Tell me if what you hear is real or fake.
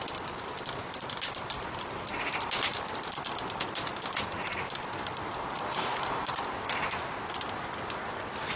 real